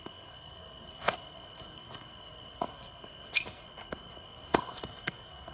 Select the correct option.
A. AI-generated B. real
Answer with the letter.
A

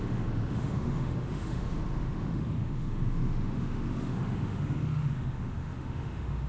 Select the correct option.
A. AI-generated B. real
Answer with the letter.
A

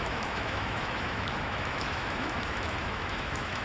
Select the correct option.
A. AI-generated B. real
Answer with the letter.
A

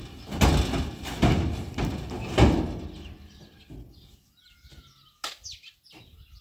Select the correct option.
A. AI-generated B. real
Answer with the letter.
B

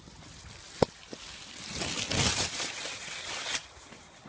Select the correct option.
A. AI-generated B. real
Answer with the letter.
A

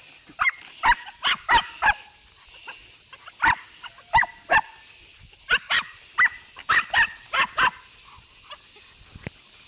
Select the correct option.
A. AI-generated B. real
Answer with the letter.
B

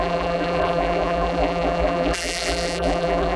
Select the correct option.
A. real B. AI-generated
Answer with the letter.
B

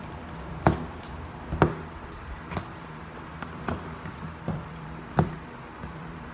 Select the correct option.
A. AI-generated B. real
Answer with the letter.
A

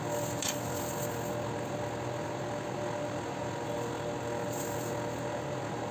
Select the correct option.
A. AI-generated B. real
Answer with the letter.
B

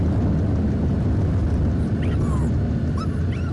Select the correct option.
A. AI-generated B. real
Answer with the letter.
B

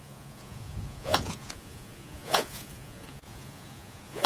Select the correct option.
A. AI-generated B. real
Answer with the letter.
A